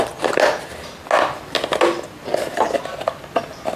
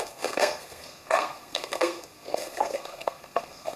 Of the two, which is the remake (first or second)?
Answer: second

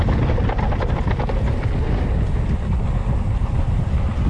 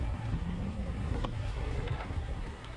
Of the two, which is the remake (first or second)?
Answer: second